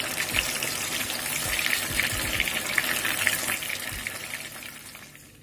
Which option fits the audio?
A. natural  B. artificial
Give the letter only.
A